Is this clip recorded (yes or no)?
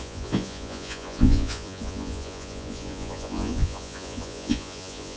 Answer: no